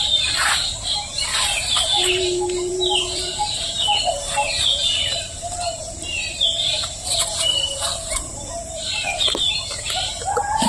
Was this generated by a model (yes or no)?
yes